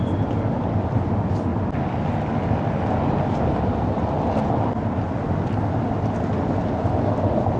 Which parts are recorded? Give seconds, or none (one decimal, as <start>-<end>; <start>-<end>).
0.0-7.6